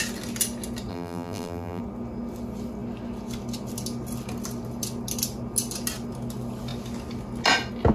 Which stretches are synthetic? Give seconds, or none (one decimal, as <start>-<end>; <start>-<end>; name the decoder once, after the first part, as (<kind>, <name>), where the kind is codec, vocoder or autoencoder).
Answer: 0.9-1.8 (vocoder, BigVGAN v2)